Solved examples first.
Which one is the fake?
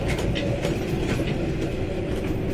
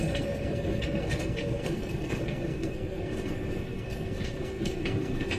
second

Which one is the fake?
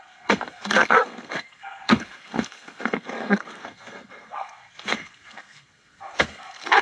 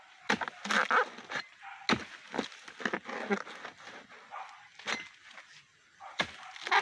first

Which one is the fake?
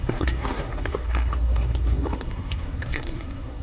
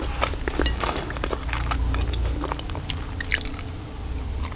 first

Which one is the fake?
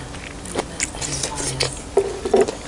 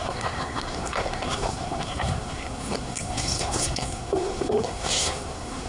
second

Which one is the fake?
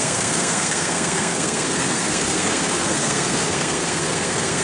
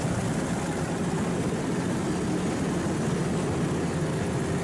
first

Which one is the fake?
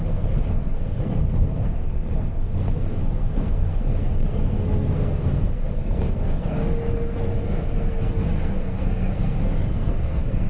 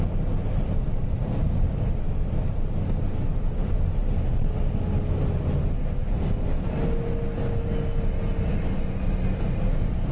first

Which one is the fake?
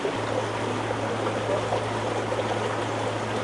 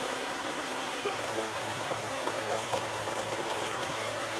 second